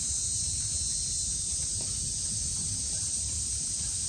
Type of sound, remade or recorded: remade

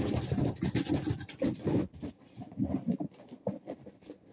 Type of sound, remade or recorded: recorded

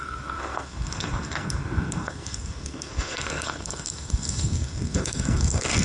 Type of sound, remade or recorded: remade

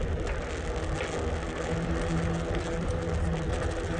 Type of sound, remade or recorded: recorded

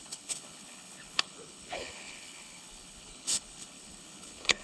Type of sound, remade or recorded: remade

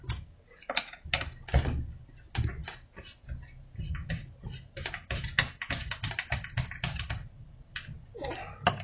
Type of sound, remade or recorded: recorded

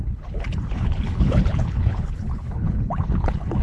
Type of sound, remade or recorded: remade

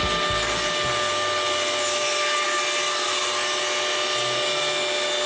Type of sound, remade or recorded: recorded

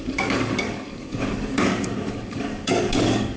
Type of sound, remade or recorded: remade